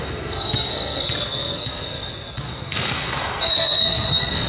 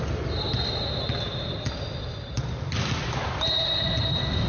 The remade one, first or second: first